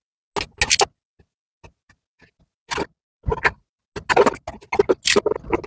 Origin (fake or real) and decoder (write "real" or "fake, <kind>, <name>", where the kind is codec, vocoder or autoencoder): real